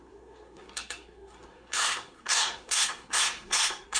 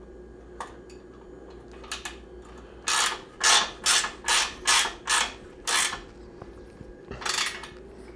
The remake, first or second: first